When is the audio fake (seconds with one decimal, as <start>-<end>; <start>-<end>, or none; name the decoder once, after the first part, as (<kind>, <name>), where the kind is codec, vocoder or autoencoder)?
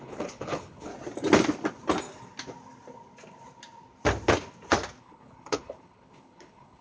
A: 0.0-0.9 (codec, HILCodec); 5.0-6.8